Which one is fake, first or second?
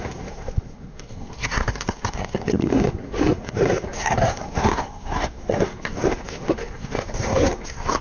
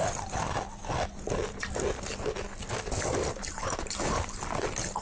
first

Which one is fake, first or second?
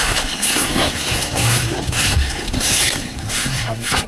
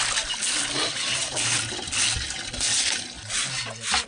first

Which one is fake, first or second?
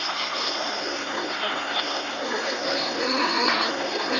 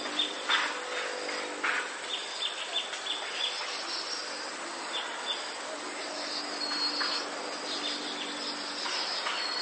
first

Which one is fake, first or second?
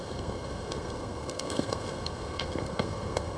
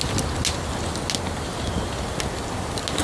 first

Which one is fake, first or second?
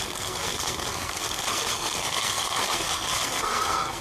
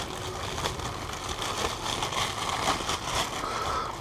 first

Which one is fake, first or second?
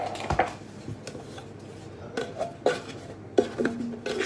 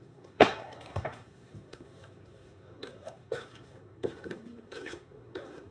second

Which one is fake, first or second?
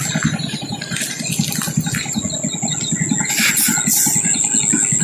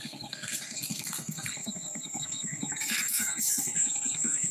second